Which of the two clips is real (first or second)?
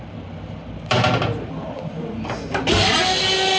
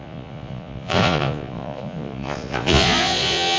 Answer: first